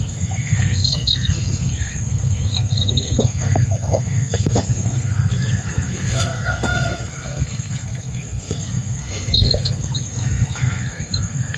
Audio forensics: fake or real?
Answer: fake